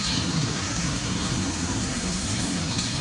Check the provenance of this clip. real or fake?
fake